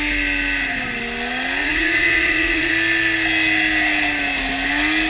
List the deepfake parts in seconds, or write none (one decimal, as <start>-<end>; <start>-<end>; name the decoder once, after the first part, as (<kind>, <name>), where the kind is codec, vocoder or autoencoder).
1.6-2.7 (vocoder, Vocos)